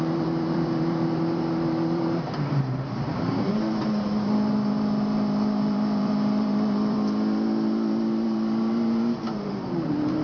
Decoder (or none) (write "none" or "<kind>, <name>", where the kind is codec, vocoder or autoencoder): vocoder, BigVGAN v2